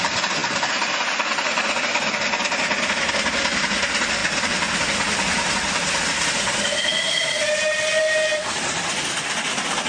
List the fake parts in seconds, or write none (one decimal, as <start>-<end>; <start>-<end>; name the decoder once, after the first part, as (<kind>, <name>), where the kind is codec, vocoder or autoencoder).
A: none